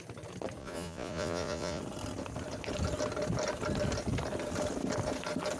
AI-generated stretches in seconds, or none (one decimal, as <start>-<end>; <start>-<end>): 0.6-1.8